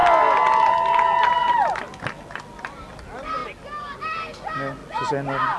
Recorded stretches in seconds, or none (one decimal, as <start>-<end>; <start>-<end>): 0.0-5.6